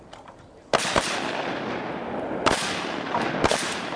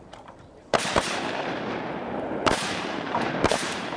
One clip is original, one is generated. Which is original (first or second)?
first